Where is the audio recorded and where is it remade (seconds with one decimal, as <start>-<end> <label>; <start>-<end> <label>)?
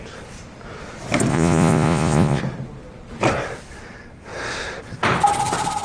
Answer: 0.0-1.3 recorded; 1.3-2.4 remade; 2.4-5.8 recorded